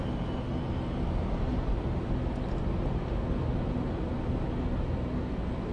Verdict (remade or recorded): recorded